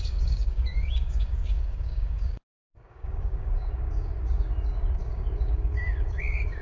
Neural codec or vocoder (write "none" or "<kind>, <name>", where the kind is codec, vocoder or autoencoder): codec, DAC